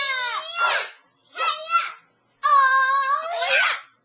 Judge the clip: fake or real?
real